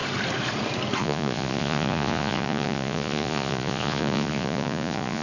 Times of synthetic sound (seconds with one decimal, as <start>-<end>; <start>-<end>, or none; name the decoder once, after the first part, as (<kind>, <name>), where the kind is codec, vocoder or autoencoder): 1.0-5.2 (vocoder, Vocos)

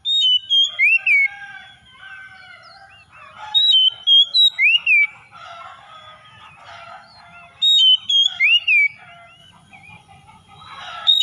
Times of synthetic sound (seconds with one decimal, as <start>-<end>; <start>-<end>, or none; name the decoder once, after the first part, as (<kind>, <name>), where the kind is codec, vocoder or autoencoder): 9.4-11.2 (vocoder, Vocos)

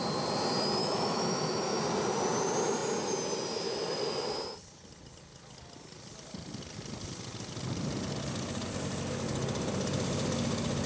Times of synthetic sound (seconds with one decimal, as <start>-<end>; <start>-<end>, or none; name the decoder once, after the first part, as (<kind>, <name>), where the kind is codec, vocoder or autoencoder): 0.8-1.8 (autoencoder, DAC-VAE)

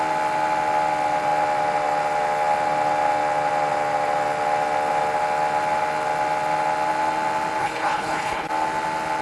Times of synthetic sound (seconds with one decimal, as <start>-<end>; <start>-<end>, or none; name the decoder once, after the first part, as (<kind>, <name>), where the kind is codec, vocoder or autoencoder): 7.6-8.5 (codec, HILCodec)

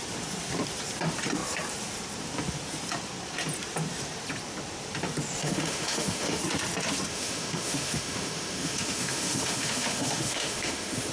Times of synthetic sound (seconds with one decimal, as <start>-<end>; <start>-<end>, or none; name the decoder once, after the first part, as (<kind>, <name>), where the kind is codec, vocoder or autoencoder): 5.4-6.4 (autoencoder, DAC-VAE); 7.1-11.1

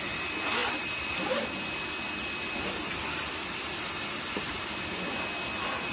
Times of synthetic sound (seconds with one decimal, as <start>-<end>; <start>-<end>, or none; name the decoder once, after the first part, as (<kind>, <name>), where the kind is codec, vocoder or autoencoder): none

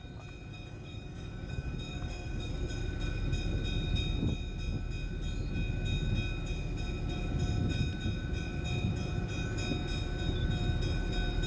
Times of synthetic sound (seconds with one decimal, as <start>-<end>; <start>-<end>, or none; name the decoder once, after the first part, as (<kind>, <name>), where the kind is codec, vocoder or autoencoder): 0.5-2.5 (codec, DAC)

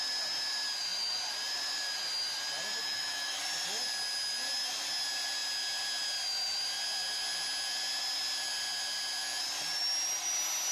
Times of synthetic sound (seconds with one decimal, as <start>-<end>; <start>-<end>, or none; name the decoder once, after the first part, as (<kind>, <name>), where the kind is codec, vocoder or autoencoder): 2.8-3.4 (autoencoder, DAC-VAE)